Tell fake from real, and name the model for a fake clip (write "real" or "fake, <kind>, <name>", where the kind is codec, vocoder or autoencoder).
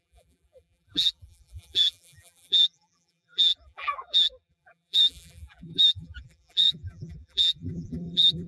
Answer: fake, vocoder, BigVGAN v2